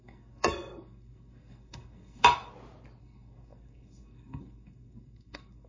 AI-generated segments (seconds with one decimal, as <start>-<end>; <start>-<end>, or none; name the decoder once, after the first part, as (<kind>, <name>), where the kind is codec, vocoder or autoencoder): 0.0-2.2 (codec, SNAC); 3.0-5.7